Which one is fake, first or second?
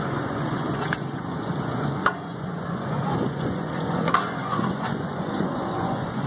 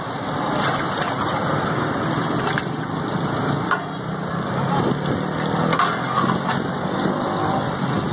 first